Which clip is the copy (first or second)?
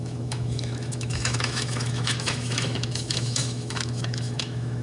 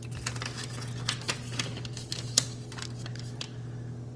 first